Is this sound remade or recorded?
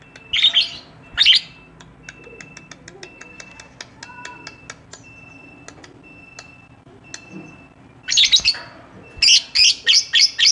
recorded